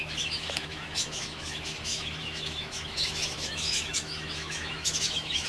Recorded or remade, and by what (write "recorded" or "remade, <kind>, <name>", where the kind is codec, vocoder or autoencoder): remade, autoencoder, DAC-VAE